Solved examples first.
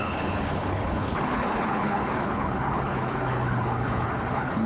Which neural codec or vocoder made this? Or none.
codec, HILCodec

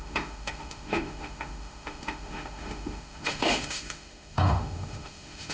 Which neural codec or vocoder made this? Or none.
autoencoder, DAC-VAE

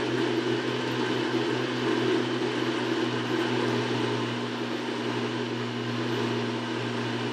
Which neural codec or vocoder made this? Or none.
none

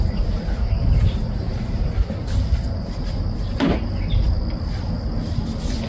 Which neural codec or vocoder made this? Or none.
none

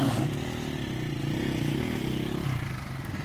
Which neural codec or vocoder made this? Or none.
none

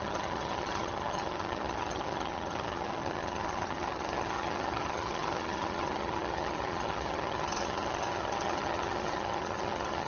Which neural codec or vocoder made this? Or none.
vocoder, HiFi-GAN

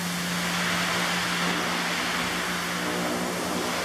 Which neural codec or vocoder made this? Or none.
none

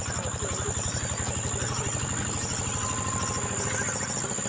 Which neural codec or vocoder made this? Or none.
none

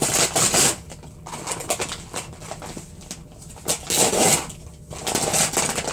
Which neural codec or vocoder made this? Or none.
none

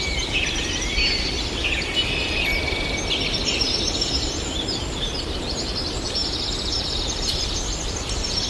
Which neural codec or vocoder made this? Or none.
vocoder, BigVGAN v2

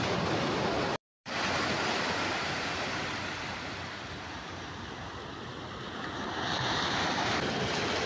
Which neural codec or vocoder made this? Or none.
vocoder, BigVGAN v2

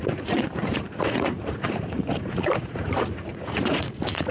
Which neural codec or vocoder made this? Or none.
vocoder, Vocos